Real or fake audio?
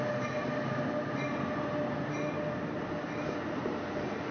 real